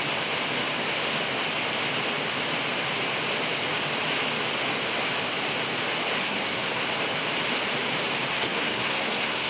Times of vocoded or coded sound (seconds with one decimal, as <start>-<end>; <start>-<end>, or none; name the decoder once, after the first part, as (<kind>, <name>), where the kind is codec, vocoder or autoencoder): 6.2-6.9 (codec, SNAC); 8.3-9.5